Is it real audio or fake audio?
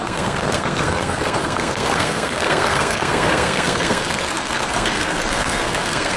fake